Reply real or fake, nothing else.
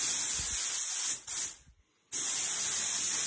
real